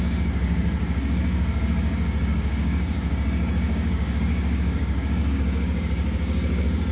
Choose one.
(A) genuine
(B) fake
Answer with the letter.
B